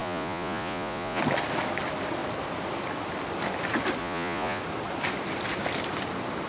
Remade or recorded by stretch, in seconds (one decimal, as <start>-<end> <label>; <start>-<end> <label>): 0.0-1.2 remade; 1.2-4.0 recorded; 4.0-4.6 remade; 4.6-6.5 recorded